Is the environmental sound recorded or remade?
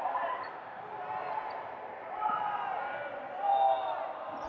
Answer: recorded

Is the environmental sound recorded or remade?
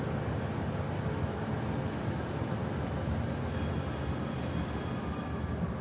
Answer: recorded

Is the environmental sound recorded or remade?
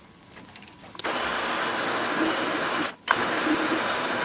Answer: remade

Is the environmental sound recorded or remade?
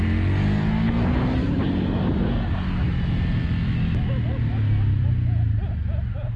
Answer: recorded